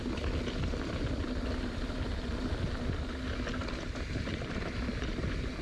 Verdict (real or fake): real